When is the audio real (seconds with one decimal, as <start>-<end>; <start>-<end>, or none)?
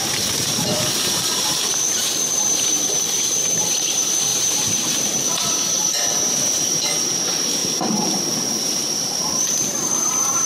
none